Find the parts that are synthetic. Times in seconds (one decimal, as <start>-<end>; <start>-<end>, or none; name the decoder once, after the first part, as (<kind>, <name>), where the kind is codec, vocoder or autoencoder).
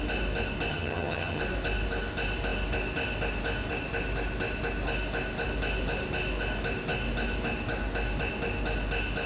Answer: 0.7-1.4 (vocoder, HiFi-GAN)